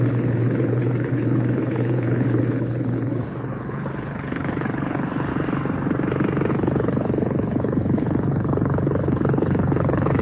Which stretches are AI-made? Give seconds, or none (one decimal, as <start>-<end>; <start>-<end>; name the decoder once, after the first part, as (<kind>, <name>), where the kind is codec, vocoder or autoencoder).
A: 0.0-5.3 (codec, HILCodec); 6.5-10.2